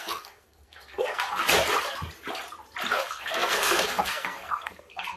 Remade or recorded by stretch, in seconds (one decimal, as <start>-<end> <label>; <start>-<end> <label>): 0.0-1.4 remade; 1.4-2.9 recorded; 2.9-5.2 remade